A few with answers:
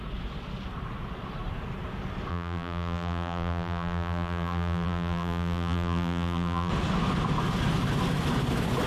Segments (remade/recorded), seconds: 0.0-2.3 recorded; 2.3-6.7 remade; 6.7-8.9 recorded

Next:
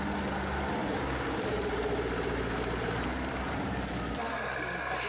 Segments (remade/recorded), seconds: 0.0-0.8 recorded; 0.8-3.9 remade; 3.9-5.1 recorded

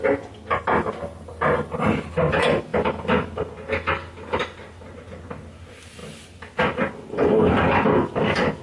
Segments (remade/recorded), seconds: 0.0-1.3 recorded; 1.3-2.1 remade; 2.1-8.6 recorded

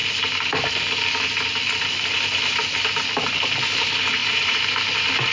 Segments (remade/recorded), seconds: 0.0-4.2 recorded; 4.2-4.8 remade; 4.8-5.3 recorded

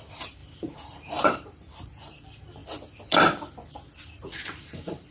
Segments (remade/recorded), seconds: 0.0-2.6 remade; 2.6-4.6 recorded; 4.6-5.1 remade

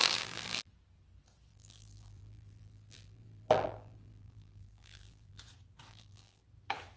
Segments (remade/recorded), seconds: 0.0-0.7 remade; 0.7-1.5 recorded; 1.5-5.4 remade; 5.4-5.9 recorded; 5.9-6.4 remade; 6.4-7.0 recorded

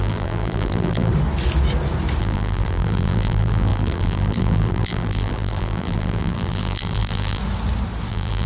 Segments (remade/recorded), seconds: 0.0-1.1 remade; 1.1-2.2 recorded; 2.2-7.4 remade; 7.4-8.1 recorded; 8.1-8.5 remade